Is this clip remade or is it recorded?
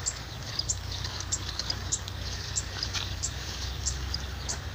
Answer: remade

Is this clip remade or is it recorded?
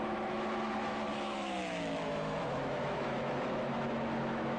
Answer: remade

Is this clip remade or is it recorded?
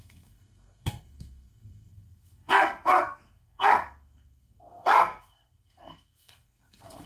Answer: remade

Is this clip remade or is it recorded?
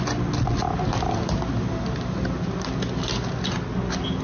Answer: recorded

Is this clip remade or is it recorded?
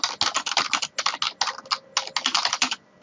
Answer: recorded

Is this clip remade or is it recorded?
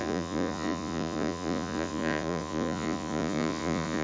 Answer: remade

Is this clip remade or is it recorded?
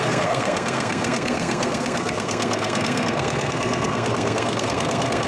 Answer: remade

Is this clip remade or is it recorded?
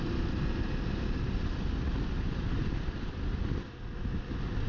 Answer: recorded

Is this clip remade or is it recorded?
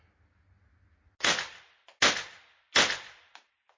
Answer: recorded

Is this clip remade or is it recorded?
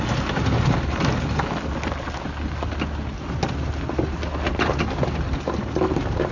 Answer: recorded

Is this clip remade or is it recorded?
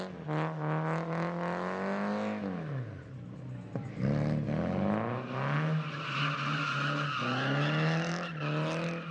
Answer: recorded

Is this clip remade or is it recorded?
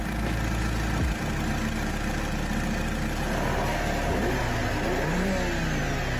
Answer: recorded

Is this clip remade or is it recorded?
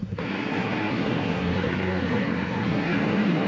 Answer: remade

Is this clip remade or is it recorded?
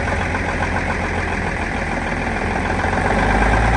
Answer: recorded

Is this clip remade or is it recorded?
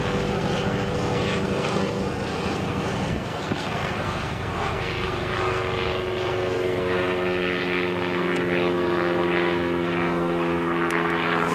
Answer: remade